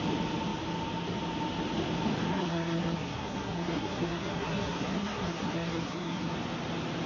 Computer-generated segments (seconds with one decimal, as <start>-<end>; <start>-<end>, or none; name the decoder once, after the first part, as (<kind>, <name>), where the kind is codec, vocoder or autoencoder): 2.3-6.3 (codec, SNAC)